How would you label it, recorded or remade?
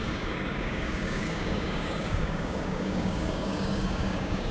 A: remade